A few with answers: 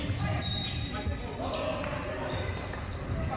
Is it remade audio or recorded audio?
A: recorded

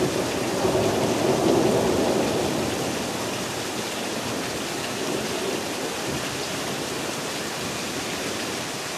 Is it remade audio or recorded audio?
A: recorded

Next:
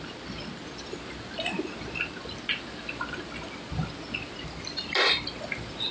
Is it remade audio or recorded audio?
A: recorded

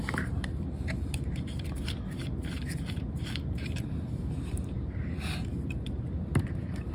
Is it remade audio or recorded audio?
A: remade